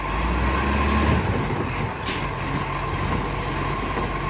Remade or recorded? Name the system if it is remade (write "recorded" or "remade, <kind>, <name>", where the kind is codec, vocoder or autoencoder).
recorded